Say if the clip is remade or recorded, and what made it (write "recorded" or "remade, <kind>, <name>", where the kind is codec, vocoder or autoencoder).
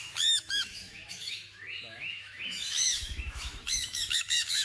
remade, autoencoder, DAC-VAE